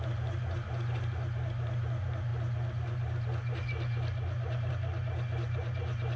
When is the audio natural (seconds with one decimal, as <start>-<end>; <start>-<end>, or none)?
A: 0.0-6.2